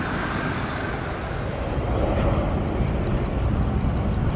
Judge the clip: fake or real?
real